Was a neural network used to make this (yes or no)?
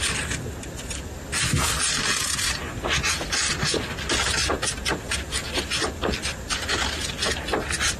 no